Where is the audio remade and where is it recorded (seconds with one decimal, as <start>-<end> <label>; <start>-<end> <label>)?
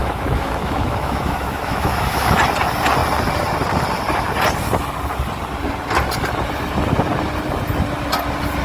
0.0-2.4 remade; 2.4-8.6 recorded